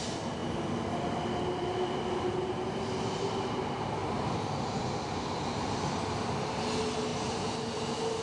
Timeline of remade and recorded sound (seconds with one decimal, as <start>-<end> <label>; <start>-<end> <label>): 0.0-8.2 recorded